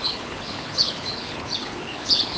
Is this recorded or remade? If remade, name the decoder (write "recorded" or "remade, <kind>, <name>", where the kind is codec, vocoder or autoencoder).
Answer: remade, codec, HILCodec